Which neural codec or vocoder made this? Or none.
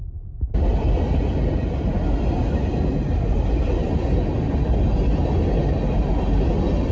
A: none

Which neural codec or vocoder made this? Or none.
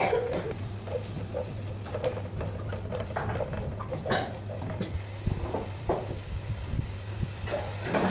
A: none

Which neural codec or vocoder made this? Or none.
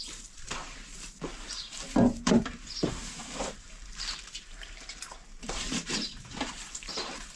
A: vocoder, BigVGAN v2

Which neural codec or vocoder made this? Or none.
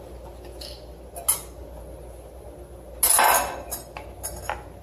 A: none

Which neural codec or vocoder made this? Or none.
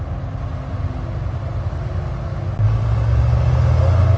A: none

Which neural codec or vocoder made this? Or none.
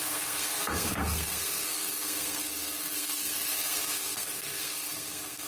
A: codec, SNAC